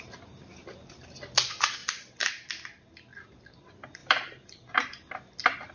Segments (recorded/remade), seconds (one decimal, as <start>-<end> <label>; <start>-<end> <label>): 0.0-1.8 recorded; 1.8-2.3 remade; 2.3-4.0 recorded; 4.0-4.7 remade; 4.7-5.7 recorded